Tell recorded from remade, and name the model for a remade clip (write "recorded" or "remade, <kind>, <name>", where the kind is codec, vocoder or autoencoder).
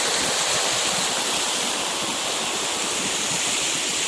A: recorded